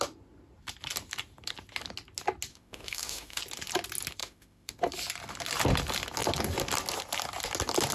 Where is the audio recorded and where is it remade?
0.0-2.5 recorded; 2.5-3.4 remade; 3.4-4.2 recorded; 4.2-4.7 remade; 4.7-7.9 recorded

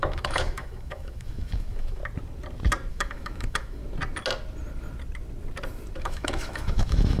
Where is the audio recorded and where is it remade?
0.0-2.0 remade; 2.0-2.9 recorded; 2.9-3.8 remade; 3.8-6.0 recorded; 6.0-7.2 remade

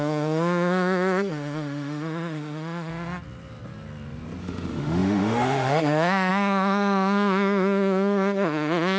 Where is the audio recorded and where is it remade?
0.0-2.9 remade; 2.9-4.4 recorded; 4.4-9.0 remade

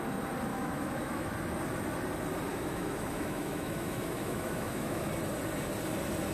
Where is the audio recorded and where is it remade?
0.0-0.5 recorded; 0.5-1.3 remade; 1.3-2.5 recorded; 2.5-5.1 remade; 5.1-6.3 recorded

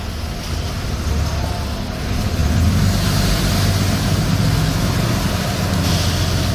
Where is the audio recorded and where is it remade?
0.0-6.5 recorded

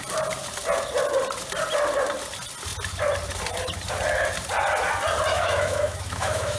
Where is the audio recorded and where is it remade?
0.0-5.3 recorded; 5.3-6.6 remade

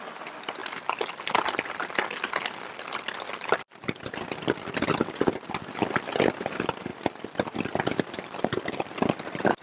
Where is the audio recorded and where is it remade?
0.0-9.6 recorded